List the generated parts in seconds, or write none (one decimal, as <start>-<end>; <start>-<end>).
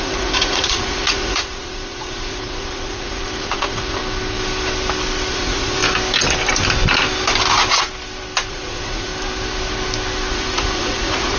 0.0-4.0; 5.3-5.8; 8.5-9.1; 10.3-11.4